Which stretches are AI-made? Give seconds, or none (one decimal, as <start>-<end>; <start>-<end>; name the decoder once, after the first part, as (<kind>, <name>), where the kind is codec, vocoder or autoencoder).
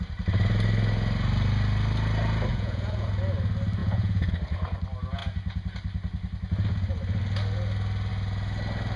2.5-3.1 (vocoder, Vocos); 3.8-4.3